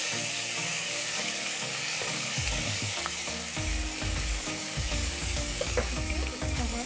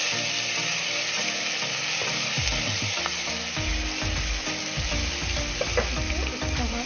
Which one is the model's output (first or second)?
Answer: first